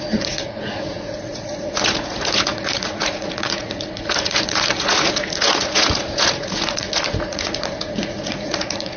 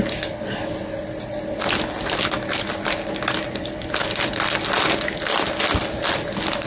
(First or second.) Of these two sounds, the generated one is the first